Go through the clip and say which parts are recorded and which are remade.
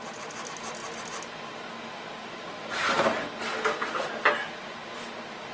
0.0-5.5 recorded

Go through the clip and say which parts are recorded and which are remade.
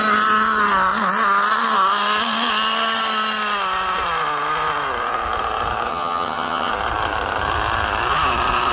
0.0-5.9 recorded; 5.9-6.7 remade; 6.7-8.7 recorded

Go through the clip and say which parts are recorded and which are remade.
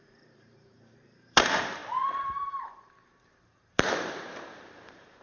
0.0-1.8 remade; 1.8-2.5 recorded; 2.5-5.2 remade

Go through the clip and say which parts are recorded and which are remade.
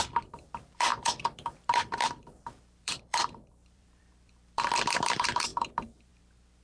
0.0-5.5 remade; 5.5-6.1 recorded; 6.1-6.6 remade